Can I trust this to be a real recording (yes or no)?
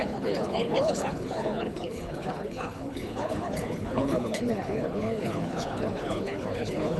no